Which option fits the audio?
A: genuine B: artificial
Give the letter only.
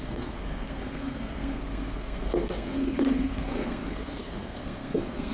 B